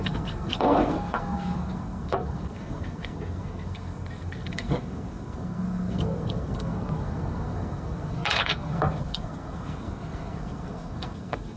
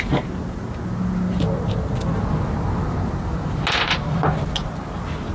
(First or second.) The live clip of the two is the second